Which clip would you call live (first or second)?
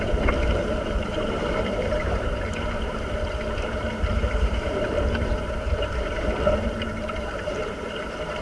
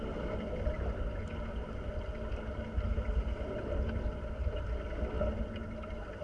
second